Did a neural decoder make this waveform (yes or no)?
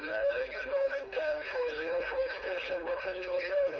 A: yes